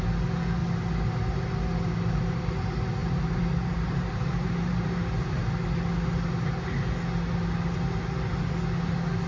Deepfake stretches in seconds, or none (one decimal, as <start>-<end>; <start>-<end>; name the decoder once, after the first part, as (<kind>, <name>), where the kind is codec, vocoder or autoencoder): 3.0-5.0 (vocoder, BigVGAN v2)